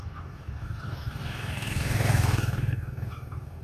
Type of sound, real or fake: fake